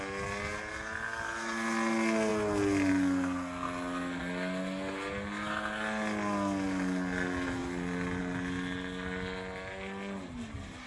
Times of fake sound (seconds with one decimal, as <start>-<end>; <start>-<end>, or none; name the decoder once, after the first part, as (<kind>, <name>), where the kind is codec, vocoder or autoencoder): none